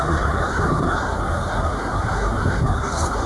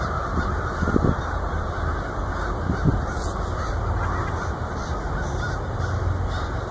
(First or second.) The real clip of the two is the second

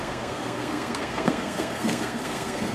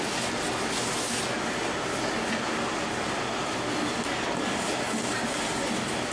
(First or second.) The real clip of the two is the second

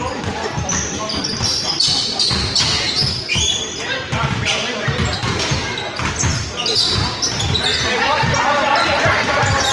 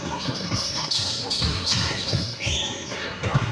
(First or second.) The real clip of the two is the first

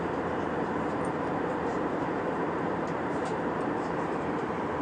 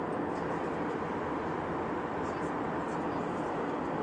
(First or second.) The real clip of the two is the second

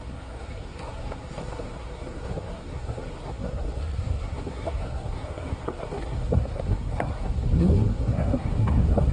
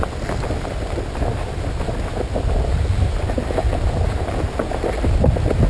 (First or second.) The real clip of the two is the second